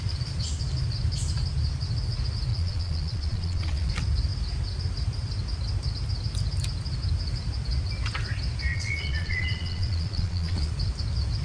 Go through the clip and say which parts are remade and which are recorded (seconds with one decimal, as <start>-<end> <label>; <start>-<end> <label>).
0.0-2.5 recorded; 2.5-3.9 remade; 3.9-8.7 recorded; 8.7-10.7 remade; 10.7-11.4 recorded